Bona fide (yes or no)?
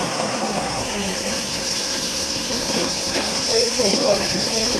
no